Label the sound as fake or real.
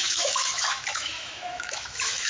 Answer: fake